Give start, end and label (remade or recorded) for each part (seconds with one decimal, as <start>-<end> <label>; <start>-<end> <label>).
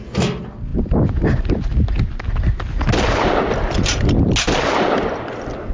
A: 0.0-5.7 recorded